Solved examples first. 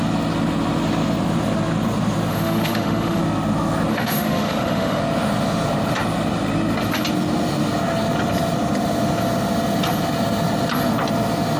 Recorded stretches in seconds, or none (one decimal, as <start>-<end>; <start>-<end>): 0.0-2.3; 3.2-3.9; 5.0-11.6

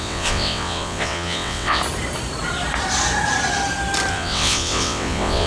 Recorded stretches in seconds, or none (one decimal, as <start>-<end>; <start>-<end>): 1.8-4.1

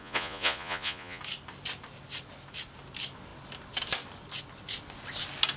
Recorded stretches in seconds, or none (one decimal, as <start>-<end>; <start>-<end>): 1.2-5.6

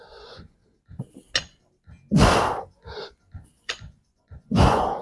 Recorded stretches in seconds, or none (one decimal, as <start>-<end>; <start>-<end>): 0.6-3.6

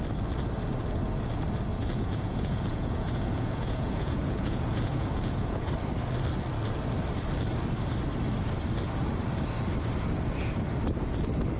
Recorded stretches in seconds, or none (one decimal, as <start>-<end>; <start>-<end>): 0.0-1.7; 5.7-11.6